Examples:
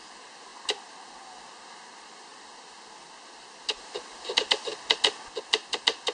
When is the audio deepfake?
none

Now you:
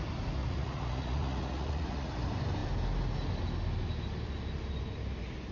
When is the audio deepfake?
0.4-2.1

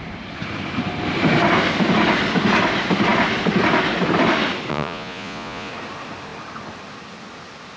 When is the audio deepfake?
4.7-5.7

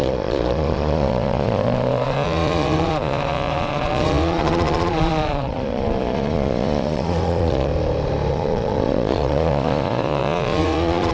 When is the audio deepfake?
0.0-7.7; 8.3-11.1

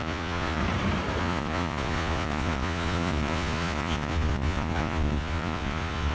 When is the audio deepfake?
0.0-0.6; 1.2-6.1

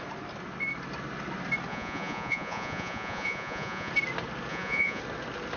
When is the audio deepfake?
1.7-3.9; 4.5-5.0